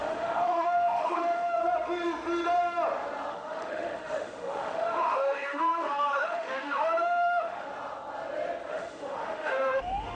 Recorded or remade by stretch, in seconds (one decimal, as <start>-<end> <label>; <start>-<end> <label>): 0.0-1.6 remade; 1.6-3.3 recorded; 3.3-7.7 remade; 7.7-8.7 recorded; 8.7-10.1 remade